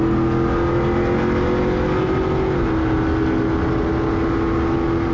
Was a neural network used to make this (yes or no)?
no